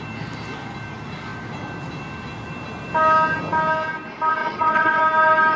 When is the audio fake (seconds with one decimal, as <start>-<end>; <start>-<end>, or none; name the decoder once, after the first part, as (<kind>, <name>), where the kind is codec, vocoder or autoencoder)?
4.4-5.0 (vocoder, WaveNeXt)